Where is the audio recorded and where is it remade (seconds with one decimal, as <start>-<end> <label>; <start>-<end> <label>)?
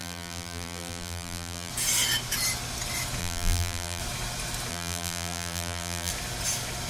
0.0-1.7 remade; 1.7-3.2 recorded; 3.2-4.0 remade; 4.0-4.7 recorded; 4.7-6.1 remade; 6.1-6.9 recorded